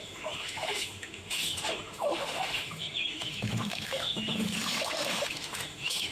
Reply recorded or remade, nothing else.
remade